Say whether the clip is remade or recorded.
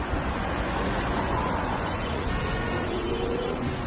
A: remade